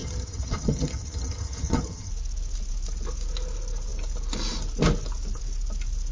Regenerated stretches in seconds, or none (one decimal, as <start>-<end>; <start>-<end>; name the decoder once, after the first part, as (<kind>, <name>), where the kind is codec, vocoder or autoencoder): 0.0-2.1 (vocoder, HiFi-GAN)